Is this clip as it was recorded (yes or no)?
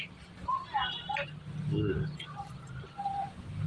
yes